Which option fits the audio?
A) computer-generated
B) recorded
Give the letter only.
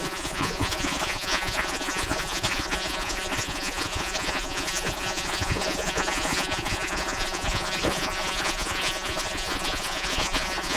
A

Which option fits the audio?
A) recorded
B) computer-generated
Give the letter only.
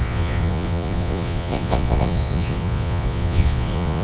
B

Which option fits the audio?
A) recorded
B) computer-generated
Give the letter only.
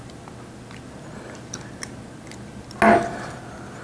A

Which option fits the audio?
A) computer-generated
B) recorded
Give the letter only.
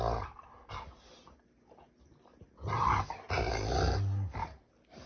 B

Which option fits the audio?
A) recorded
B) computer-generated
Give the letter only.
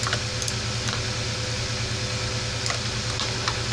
B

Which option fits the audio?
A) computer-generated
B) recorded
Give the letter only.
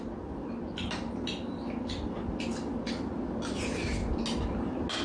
B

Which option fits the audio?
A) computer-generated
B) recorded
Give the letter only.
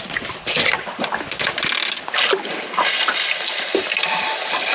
B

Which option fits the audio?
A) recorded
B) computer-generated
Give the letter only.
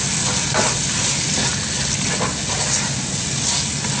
A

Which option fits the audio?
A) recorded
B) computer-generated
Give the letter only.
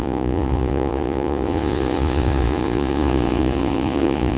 B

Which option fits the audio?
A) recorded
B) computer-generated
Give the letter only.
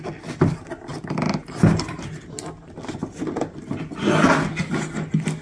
A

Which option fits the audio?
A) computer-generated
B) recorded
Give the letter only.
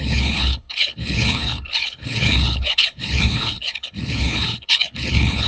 A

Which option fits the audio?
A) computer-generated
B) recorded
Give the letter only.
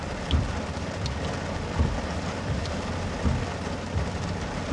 B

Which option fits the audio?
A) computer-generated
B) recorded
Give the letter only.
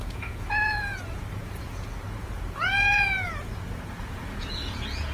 A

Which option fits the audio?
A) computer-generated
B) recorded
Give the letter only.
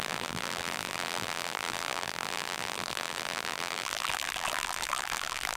A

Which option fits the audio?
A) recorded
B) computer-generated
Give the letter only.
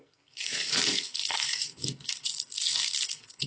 B